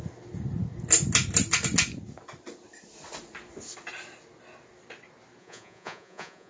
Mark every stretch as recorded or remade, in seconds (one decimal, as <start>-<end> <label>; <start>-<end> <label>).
0.0-5.4 recorded; 5.4-6.5 remade